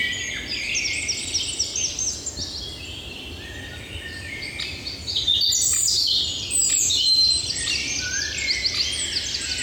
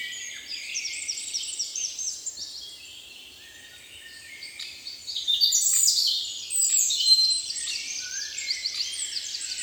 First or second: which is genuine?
first